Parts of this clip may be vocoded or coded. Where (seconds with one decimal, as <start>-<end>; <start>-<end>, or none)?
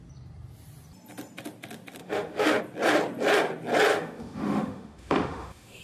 2.0-2.6; 3.9-5.8